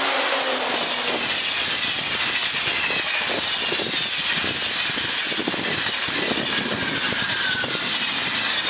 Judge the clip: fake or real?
real